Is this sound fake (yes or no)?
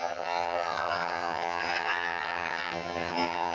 yes